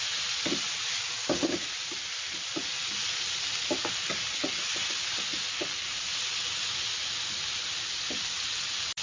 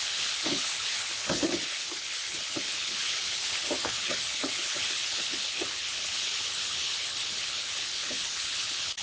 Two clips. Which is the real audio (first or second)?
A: first